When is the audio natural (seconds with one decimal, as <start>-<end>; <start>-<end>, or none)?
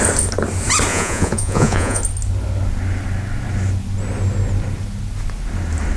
0.0-0.9; 2.0-6.0